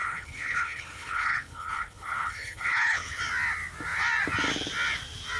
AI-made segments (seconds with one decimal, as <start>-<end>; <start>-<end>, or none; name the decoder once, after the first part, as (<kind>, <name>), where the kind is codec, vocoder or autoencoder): 0.0-3.2 (codec, HILCodec)